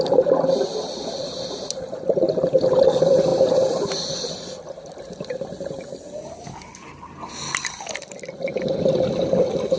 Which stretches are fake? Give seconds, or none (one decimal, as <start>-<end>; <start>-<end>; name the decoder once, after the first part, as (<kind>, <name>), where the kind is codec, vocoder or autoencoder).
none

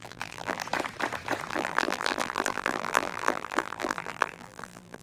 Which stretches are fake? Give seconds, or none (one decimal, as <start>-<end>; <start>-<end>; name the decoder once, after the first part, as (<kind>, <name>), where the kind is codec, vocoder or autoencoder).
0.0-0.6 (vocoder, BigVGAN v2); 1.5-5.0

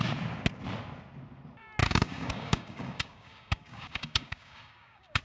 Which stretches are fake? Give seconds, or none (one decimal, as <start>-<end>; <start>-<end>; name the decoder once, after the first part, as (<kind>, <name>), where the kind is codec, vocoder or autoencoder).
1.8-5.2 (codec, DAC)

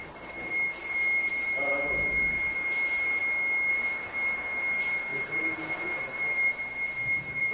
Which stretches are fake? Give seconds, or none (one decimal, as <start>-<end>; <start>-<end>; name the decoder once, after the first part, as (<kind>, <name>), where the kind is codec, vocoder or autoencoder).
0.0-3.2 (vocoder, BigVGAN v2); 3.7-7.5

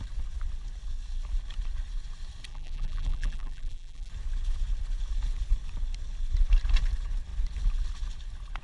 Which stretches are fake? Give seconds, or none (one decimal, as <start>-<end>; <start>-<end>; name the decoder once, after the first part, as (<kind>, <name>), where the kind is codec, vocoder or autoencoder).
2.5-4.1 (vocoder, BigVGAN v2)

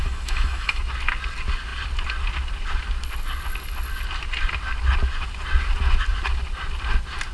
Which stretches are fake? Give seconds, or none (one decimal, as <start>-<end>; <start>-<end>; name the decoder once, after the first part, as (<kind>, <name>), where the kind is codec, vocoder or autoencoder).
0.0-0.8 (autoencoder, DAC-VAE)

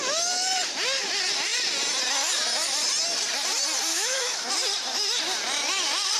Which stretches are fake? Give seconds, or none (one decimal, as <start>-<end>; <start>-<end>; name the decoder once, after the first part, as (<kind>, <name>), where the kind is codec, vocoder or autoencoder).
3.9-4.5 (autoencoder, DAC-VAE)

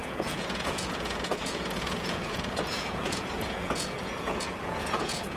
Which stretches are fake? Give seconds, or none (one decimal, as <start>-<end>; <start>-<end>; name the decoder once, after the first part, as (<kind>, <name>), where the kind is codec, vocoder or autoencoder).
0.0-5.4 (vocoder, Vocos)